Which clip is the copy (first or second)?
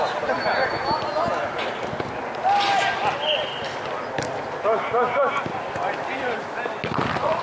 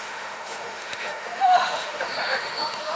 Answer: second